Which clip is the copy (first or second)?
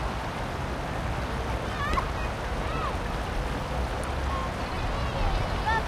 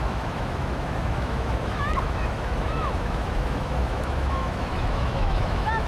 second